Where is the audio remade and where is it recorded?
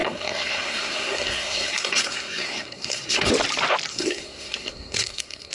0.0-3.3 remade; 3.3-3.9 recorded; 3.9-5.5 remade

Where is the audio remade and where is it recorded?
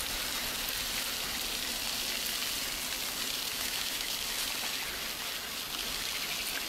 0.0-3.5 recorded; 3.5-4.1 remade; 4.1-6.7 recorded